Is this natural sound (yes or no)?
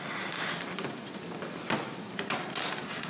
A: yes